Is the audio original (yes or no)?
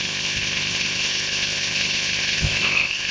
no